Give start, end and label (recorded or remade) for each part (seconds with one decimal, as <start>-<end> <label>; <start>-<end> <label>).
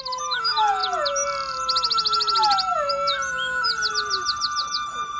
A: 0.0-5.2 recorded